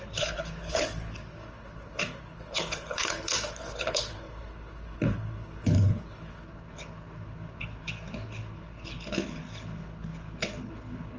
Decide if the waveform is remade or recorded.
remade